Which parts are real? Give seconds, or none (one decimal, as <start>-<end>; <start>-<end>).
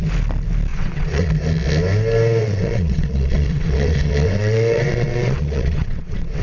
0.0-0.7; 1.3-2.4